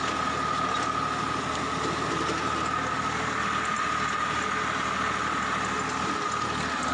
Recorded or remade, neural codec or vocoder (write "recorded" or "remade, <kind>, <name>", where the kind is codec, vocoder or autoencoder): recorded